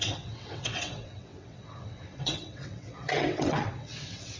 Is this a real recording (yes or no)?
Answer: no